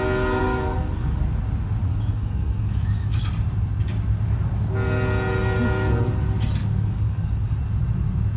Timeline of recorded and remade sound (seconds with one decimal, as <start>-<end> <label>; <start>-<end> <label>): 0.0-0.4 recorded; 0.4-1.2 remade; 1.2-1.9 recorded; 1.9-3.3 remade; 3.3-6.6 recorded; 6.6-7.6 remade; 7.6-8.4 recorded